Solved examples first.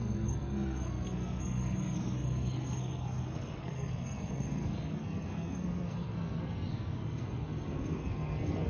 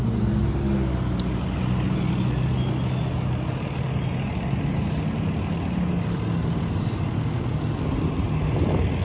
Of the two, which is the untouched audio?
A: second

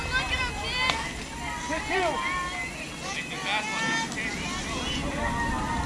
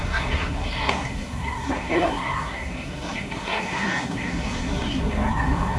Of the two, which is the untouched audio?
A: first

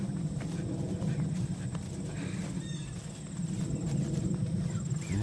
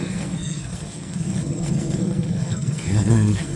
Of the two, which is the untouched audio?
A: first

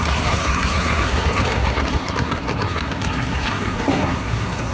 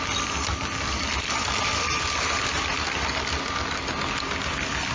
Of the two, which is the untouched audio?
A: second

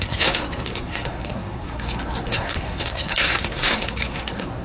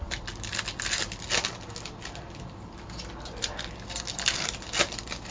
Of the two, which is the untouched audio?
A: second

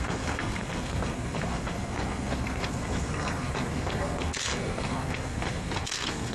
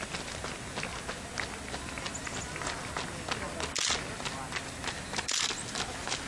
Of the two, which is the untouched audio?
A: second